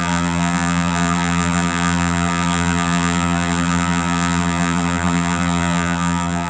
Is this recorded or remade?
remade